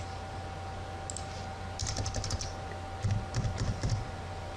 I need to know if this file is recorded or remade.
recorded